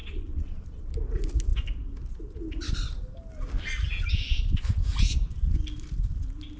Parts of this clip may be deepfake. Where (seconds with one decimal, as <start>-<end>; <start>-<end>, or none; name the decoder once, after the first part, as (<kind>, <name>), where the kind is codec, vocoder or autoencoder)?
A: 0.0-0.9 (vocoder, Vocos)